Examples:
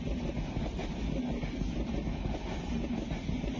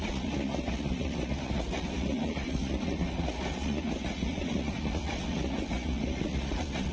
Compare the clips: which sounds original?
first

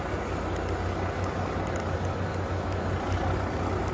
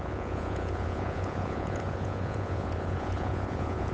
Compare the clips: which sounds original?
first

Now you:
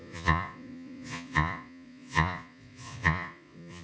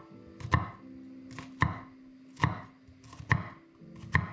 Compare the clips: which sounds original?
second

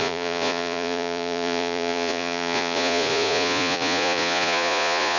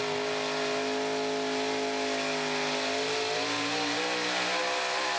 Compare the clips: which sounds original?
second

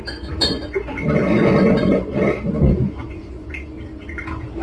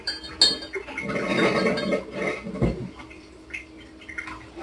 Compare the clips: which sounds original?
second